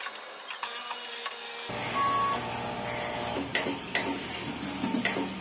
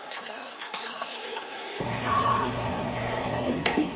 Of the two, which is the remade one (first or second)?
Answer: second